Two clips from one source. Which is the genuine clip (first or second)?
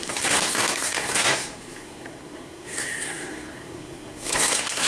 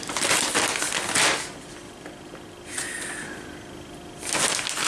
second